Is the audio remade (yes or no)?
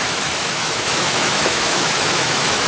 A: yes